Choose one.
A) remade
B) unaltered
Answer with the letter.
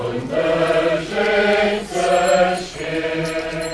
A